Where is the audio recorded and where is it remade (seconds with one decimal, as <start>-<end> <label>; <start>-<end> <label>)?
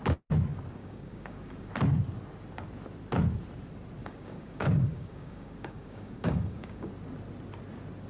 0.0-0.8 recorded; 0.8-1.7 remade; 1.7-4.0 recorded; 4.0-6.9 remade; 6.9-8.1 recorded